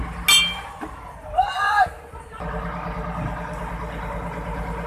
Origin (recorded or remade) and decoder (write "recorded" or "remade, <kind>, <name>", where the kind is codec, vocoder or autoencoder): recorded